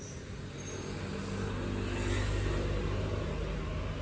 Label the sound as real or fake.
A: real